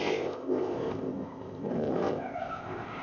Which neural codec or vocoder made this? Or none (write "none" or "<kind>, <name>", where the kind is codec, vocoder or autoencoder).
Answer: codec, ZipCodec